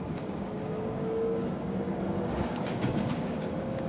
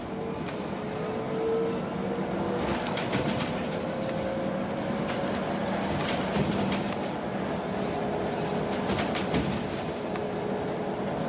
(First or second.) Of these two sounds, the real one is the second